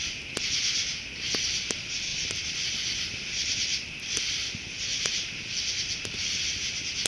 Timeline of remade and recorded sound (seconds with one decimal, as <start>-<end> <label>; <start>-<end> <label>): 0.0-2.1 recorded; 2.1-4.2 remade; 4.2-7.1 recorded